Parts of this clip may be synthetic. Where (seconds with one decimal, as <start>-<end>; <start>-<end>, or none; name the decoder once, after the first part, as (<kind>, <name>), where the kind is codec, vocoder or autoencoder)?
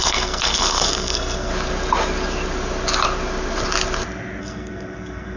0.0-1.5 (codec, SNAC); 4.4-5.4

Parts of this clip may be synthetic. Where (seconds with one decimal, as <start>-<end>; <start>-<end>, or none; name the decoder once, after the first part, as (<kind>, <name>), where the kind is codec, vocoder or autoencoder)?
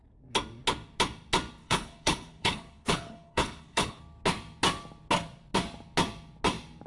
1.6-4.0 (codec, HILCodec)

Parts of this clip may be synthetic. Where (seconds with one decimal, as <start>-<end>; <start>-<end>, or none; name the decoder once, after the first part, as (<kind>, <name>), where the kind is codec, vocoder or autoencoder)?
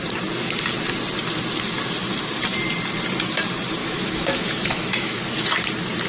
3.8-5.2 (autoencoder, DAC-VAE)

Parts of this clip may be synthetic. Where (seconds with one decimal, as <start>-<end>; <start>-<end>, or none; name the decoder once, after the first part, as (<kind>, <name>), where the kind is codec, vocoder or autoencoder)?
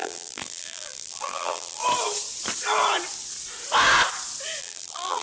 0.0-1.8 (vocoder, BigVGAN v2); 4.6-5.2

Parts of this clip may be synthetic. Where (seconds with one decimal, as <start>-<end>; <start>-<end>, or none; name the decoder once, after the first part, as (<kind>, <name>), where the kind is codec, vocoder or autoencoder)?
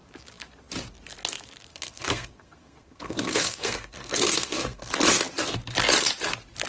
1.7-4.9 (codec, SNAC)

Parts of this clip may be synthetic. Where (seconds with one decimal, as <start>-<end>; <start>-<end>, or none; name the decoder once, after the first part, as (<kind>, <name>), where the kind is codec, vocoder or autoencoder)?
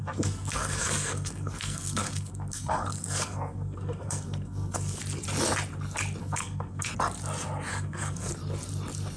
0.0-5.0 (codec, SNAC); 6.2-6.9; 7.7-8.3